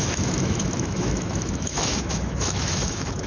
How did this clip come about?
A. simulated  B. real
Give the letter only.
A